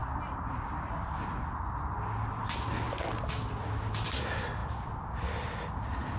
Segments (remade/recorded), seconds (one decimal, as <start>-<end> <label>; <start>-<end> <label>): 0.0-6.2 recorded